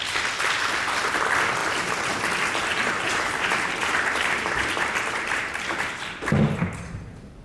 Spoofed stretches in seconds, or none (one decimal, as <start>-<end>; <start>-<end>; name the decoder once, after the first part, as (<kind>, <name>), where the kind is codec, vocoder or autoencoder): 1.6-6.0 (vocoder, BigVGAN v2)